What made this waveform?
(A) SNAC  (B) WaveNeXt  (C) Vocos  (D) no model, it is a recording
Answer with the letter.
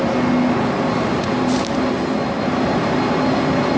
D